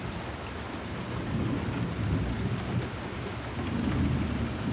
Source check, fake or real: real